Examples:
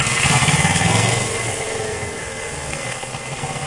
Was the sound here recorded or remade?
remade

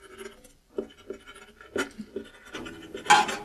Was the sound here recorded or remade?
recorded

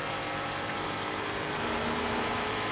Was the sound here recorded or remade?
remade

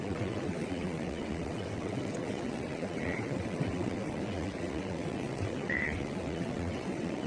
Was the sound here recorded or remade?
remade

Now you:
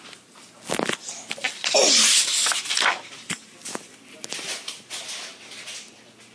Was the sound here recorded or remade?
recorded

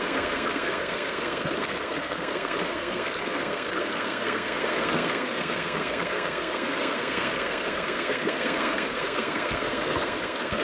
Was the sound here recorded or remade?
remade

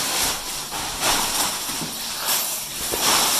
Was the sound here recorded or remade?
recorded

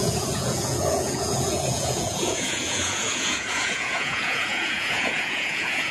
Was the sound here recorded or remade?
remade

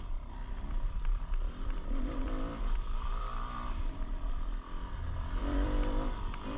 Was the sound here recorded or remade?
remade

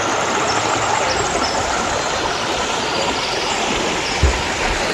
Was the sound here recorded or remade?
recorded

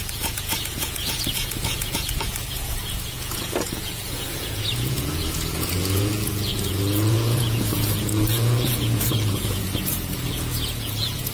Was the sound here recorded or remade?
remade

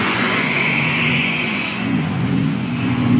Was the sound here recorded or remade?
remade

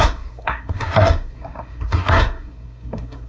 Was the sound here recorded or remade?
remade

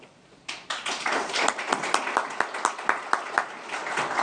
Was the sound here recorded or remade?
recorded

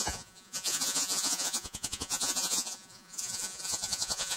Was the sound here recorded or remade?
remade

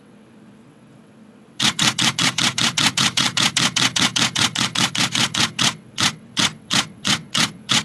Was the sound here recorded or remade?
remade